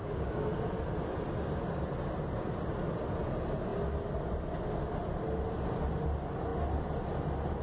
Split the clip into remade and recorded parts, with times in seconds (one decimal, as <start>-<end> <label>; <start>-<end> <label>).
0.0-0.6 remade; 0.6-7.6 recorded